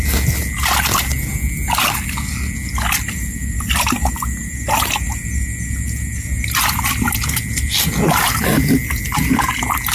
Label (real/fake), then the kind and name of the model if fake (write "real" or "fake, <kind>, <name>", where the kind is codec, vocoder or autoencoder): real